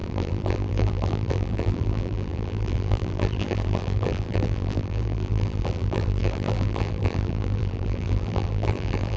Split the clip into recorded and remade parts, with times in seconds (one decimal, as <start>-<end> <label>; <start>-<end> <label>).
0.0-9.2 remade